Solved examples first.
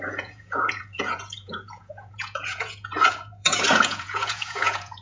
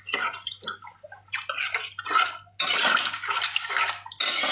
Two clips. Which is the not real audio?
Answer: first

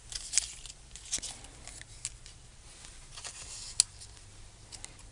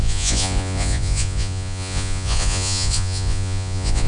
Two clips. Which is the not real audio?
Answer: second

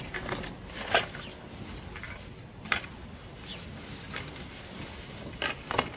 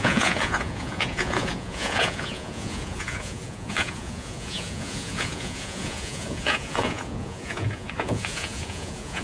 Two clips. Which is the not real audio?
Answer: second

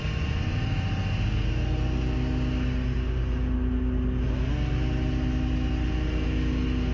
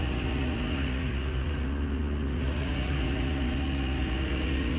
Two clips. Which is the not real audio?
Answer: second